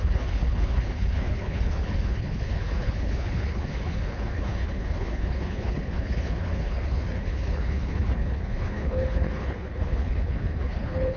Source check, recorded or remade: remade